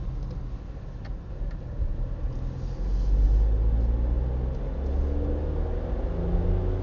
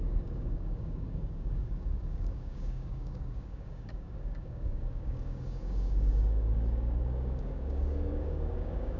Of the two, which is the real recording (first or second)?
first